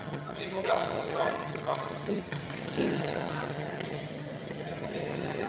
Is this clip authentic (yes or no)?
no